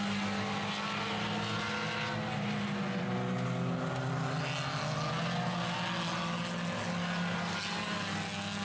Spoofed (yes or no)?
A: no